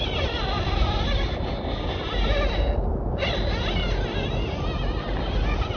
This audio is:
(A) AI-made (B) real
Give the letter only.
B